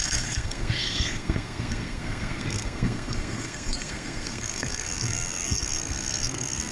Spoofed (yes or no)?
yes